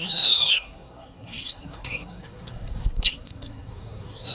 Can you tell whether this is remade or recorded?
remade